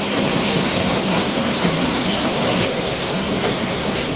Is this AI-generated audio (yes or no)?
yes